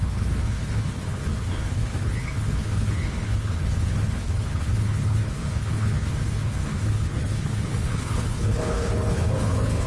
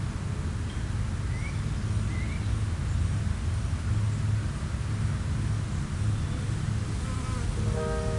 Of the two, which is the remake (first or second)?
first